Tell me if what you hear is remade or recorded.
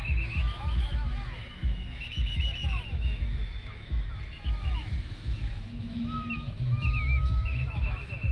remade